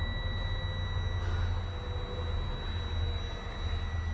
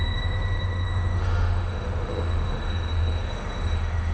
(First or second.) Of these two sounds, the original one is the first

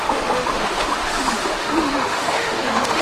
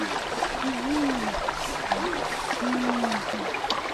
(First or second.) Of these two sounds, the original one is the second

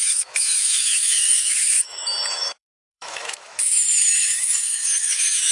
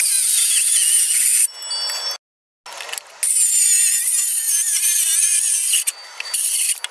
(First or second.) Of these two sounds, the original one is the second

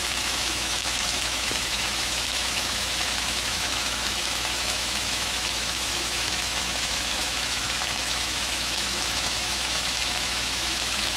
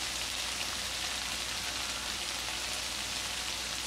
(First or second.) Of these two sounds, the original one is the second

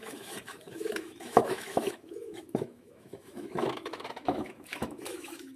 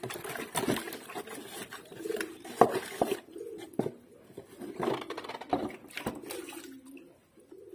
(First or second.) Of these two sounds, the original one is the second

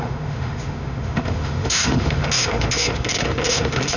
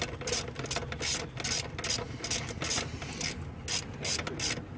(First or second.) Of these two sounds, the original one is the second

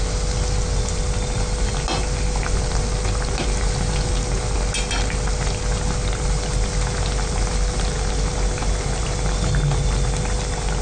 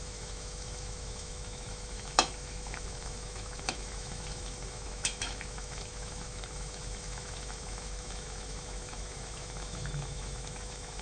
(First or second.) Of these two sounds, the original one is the first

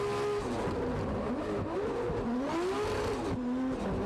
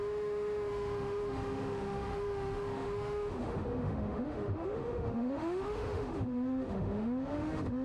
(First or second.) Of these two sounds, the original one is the first